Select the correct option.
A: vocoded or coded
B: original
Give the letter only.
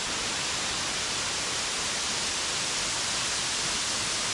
B